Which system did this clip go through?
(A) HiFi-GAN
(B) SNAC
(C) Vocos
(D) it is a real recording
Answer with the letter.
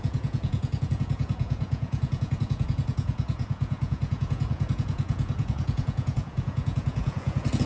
C